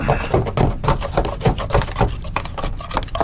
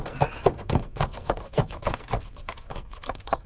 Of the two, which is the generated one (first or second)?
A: second